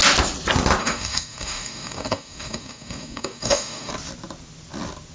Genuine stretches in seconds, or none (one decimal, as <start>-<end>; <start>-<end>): 0.0-0.8; 3.9-5.1